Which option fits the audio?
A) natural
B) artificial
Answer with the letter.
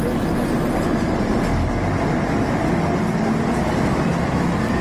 A